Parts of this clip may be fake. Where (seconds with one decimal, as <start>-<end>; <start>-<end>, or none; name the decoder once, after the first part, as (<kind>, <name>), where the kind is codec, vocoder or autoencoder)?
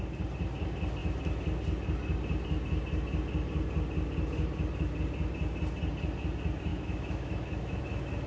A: 6.7-7.8 (autoencoder, DAC-VAE)